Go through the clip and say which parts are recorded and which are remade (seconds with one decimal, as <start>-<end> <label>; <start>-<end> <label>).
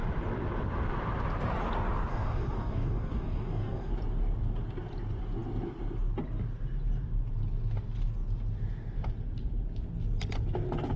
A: 0.0-2.1 recorded; 2.1-3.9 remade; 3.9-11.0 recorded